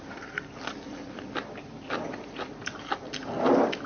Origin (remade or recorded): recorded